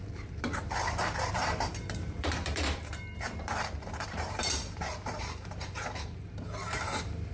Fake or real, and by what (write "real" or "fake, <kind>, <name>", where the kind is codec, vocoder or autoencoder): fake, vocoder, BigVGAN v2